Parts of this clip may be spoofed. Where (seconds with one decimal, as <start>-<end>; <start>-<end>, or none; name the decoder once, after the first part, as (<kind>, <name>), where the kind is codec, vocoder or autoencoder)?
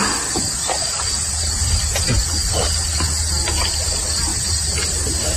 0.6-3.8 (vocoder, BigVGAN v2); 4.3-5.0